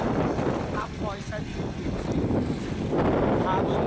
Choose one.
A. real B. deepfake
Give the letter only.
A